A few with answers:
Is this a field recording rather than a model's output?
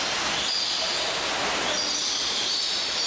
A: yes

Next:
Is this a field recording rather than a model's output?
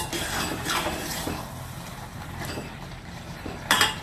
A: no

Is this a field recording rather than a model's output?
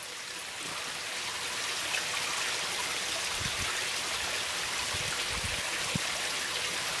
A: yes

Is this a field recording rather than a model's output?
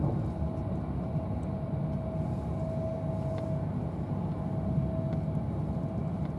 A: yes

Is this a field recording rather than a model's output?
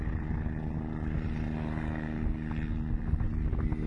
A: yes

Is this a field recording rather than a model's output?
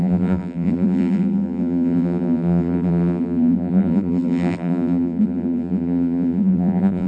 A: no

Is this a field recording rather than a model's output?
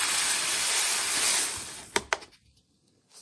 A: yes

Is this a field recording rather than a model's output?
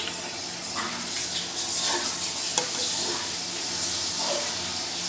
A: yes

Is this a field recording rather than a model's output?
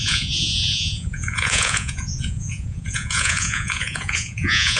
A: no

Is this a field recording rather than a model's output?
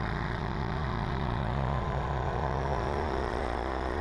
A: no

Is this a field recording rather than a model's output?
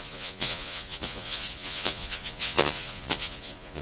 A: no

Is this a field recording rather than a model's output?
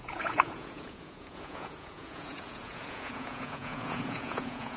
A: no